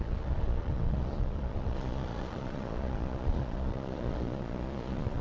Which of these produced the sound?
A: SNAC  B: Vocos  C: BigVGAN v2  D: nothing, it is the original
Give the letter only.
B